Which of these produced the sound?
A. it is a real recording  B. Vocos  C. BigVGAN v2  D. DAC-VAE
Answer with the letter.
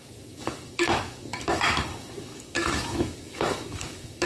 D